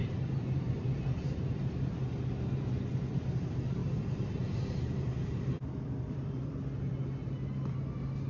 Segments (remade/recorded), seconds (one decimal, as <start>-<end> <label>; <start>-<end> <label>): 0.0-0.7 remade; 0.7-3.8 recorded; 3.8-6.6 remade; 6.6-8.3 recorded